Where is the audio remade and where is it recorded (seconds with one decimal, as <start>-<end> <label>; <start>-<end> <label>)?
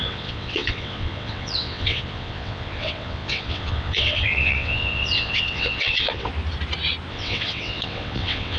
0.0-6.3 remade; 6.3-7.1 recorded; 7.1-8.6 remade